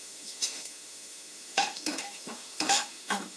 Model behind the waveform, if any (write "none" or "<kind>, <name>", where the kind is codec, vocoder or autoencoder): autoencoder, DAC-VAE